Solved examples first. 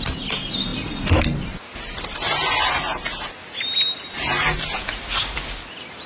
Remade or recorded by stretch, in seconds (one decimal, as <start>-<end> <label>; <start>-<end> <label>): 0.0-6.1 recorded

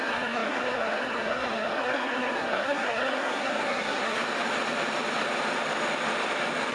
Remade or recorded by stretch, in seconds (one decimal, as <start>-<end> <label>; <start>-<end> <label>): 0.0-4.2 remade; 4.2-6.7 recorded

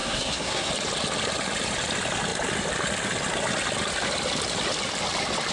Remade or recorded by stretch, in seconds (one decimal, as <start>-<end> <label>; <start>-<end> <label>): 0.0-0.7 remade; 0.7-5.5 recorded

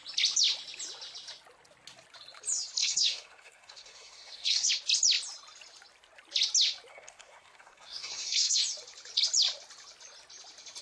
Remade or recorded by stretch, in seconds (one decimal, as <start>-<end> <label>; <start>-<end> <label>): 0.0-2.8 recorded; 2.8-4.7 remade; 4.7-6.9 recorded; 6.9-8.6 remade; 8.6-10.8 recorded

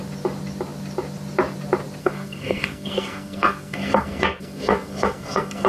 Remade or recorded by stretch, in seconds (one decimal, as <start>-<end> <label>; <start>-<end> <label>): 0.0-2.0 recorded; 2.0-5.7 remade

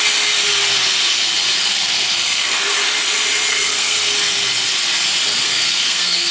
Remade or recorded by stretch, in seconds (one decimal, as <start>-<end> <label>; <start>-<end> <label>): 0.0-1.7 recorded; 1.7-2.8 remade; 2.8-3.5 recorded; 3.5-4.1 remade; 4.1-5.4 recorded; 5.4-6.3 remade

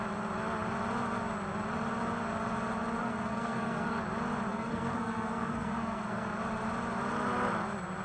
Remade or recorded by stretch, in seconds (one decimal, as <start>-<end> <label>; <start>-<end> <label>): 0.0-3.0 recorded; 3.0-4.0 remade; 4.0-4.5 recorded; 4.5-6.3 remade; 6.3-8.0 recorded

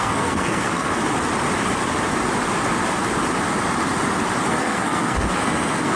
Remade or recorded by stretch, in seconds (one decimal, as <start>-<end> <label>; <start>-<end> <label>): 0.0-0.9 remade; 0.9-4.5 recorded; 4.5-6.0 remade